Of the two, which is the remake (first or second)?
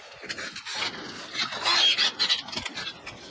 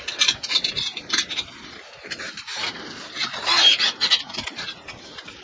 second